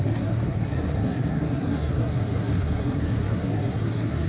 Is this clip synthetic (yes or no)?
yes